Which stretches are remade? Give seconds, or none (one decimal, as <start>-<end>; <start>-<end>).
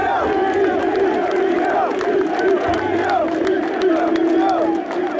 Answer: none